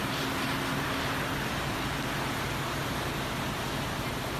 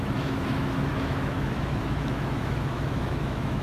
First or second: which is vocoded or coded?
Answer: second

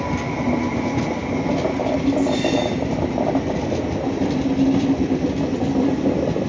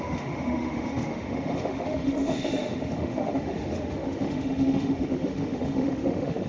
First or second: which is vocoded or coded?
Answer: second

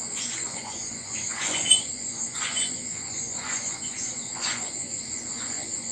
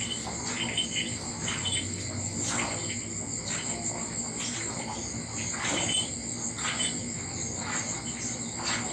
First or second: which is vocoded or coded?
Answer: first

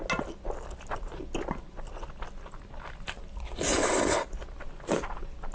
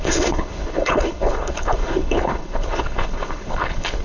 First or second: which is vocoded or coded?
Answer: second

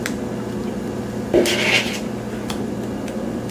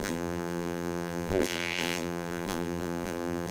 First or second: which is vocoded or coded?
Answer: second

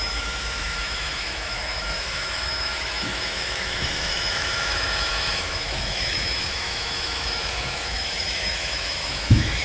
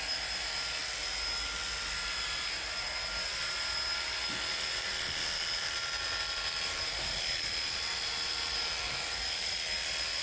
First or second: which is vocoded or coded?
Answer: first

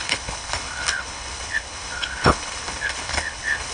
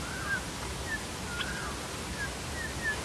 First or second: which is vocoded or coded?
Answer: first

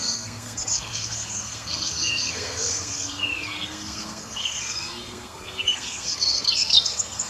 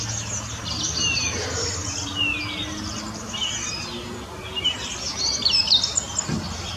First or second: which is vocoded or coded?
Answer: first